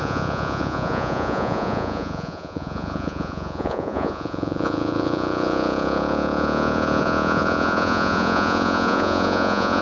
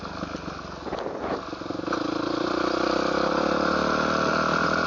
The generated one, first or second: first